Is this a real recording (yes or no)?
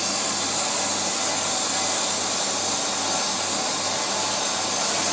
yes